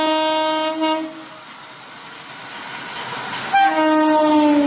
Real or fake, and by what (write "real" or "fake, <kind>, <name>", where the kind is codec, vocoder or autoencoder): real